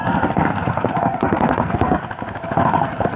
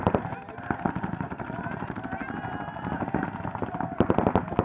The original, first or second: second